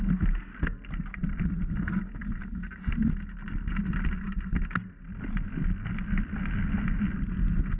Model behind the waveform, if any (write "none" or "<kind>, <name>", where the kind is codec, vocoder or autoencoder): none